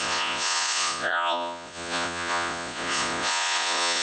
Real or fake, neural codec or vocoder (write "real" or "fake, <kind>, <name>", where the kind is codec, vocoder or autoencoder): fake, vocoder, Vocos